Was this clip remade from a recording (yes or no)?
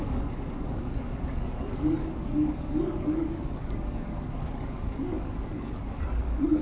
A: yes